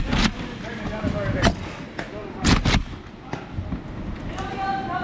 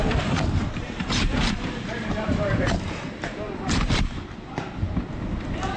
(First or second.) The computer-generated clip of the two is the second